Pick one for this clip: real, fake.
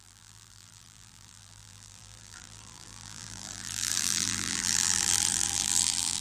fake